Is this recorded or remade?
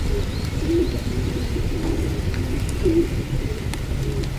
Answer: recorded